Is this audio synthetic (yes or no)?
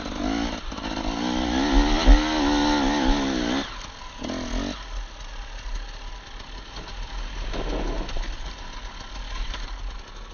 no